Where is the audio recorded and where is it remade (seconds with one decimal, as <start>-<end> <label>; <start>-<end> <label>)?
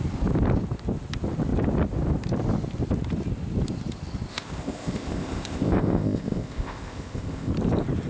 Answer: 0.0-4.3 recorded; 4.3-7.5 remade; 7.5-8.1 recorded